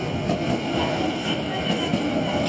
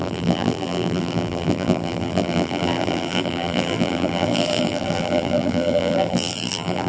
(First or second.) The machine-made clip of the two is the second